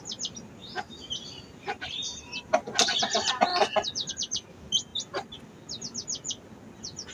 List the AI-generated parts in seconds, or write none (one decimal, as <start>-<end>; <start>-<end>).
0.6-2.4